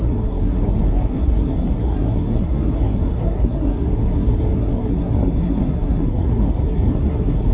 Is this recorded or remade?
remade